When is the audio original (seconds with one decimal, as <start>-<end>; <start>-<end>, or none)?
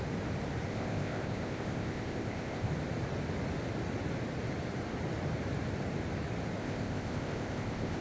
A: 0.0-0.7; 2.7-6.6